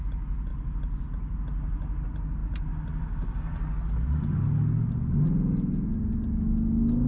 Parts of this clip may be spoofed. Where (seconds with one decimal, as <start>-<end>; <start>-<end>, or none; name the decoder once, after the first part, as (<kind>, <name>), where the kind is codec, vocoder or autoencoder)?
none